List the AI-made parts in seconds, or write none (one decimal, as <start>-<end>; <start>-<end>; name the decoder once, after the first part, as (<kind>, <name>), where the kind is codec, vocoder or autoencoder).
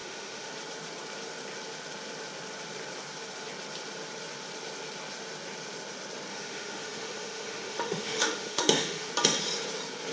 0.0-0.5 (autoencoder, DAC-VAE); 6.3-9.1